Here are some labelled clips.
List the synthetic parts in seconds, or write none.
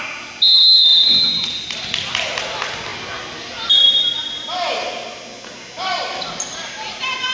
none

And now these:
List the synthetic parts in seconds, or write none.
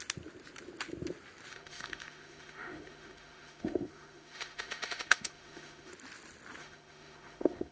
1.5-5.9 (autoencoder, DAC-VAE); 6.6-7.7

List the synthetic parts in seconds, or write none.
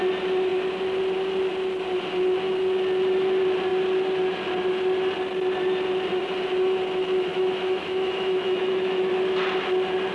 7.3-9.1 (autoencoder, DAC-VAE)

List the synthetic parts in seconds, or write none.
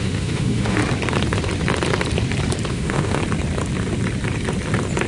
0.0-0.8 (autoencoder, DAC-VAE); 2.7-3.2